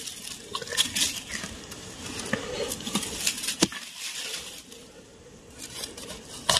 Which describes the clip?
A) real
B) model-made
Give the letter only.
A